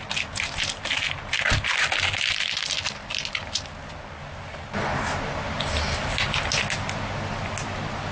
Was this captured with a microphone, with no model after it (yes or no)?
yes